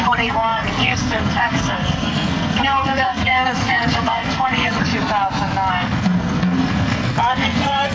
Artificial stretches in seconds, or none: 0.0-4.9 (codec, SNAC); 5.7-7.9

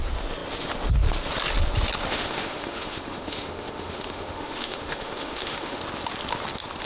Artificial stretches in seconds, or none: 2.1-5.8 (autoencoder, DAC-VAE)

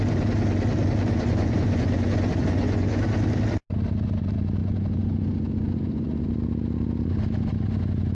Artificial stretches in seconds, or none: 1.1-3.0 (vocoder, Vocos); 4.6-6.3

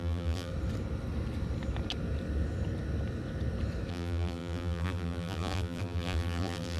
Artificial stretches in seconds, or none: 0.0-0.5 (vocoder, BigVGAN v2); 3.9-6.8

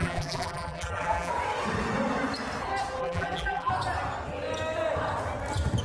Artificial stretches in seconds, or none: 0.0-1.3 (vocoder, BigVGAN v2); 3.0-3.7

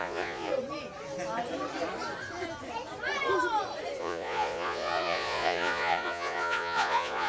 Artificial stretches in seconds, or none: 0.0-0.5 (vocoder, Vocos); 4.0-7.3

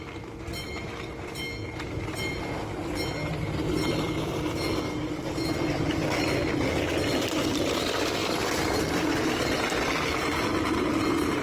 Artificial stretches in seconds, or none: 8.2-9.7 (vocoder, BigVGAN v2)

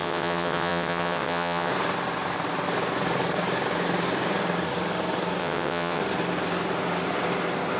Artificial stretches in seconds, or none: 0.0-1.7 (vocoder, WaveNeXt); 5.4-6.0